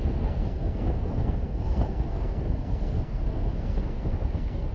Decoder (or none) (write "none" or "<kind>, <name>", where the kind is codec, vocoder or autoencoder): codec, SNAC